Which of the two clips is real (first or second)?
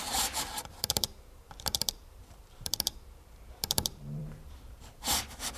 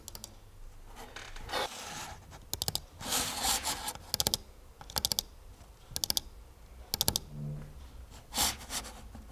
second